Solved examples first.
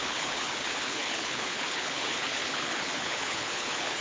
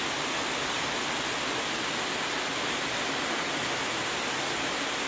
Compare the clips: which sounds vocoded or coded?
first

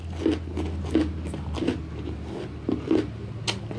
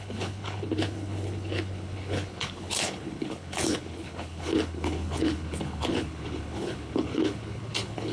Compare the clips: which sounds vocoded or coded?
second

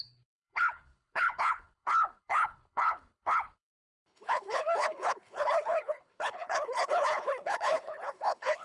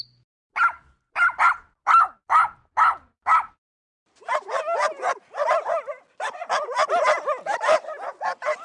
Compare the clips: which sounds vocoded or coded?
first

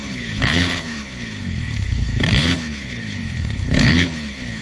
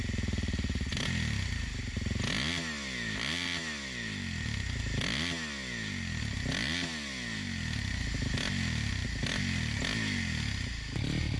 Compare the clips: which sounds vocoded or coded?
first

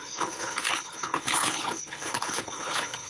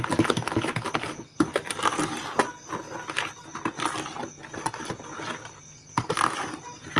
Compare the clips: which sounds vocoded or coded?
first